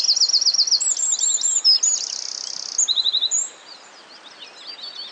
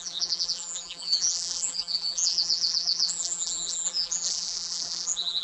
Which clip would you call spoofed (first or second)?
second